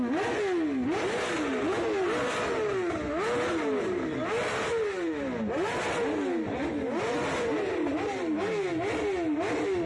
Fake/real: real